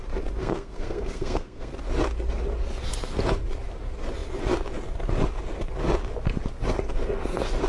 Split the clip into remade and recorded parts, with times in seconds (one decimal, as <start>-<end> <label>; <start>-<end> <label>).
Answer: 0.0-0.4 recorded; 0.4-1.7 remade; 1.7-7.7 recorded